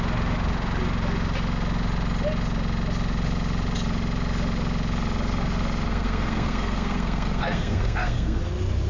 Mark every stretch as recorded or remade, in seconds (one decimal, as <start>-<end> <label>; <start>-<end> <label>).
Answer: 0.0-5.9 recorded; 5.9-8.4 remade; 8.4-8.9 recorded